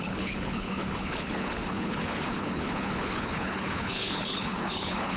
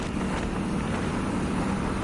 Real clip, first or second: second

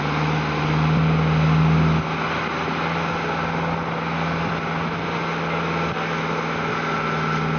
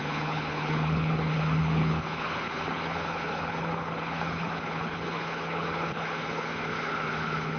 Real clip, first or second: first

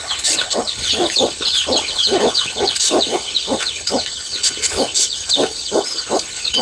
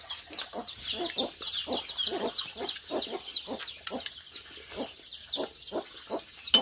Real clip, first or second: second